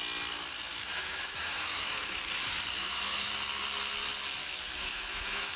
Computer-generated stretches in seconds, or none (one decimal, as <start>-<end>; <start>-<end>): 0.7-2.2; 2.8-3.3; 4.4-5.6